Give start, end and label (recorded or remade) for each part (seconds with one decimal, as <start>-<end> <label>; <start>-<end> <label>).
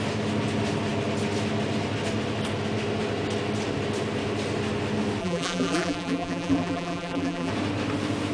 0.0-5.2 recorded; 5.2-7.5 remade; 7.5-8.3 recorded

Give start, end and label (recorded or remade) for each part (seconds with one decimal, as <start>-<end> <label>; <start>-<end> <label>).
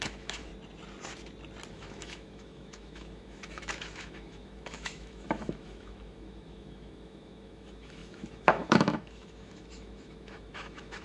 0.0-0.5 remade; 0.5-1.7 recorded; 1.7-11.0 remade